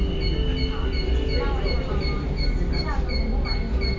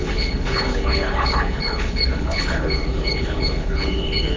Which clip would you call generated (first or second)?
second